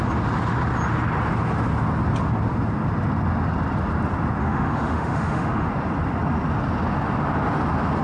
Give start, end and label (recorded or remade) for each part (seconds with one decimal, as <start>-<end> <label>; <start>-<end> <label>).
0.0-4.4 recorded; 4.4-5.7 remade; 5.7-8.0 recorded